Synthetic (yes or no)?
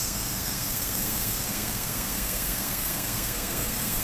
yes